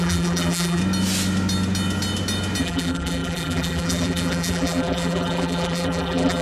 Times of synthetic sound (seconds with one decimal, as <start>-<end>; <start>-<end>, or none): 0.0-0.8; 2.6-6.4